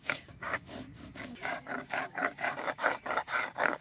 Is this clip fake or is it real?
fake